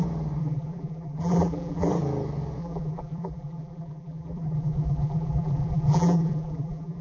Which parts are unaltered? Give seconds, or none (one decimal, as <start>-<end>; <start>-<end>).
0.0-0.4; 1.9-2.6